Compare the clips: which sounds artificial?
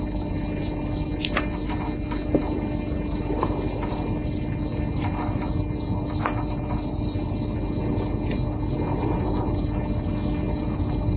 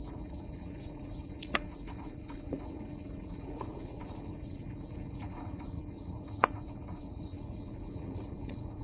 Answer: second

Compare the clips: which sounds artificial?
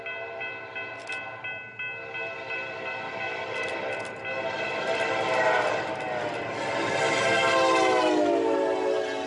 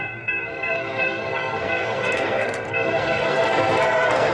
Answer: second